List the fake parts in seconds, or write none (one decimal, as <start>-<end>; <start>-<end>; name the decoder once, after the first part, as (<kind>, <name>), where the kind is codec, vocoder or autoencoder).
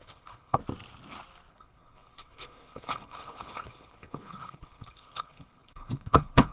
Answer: 0.0-0.6 (codec, HILCodec); 1.5-6.5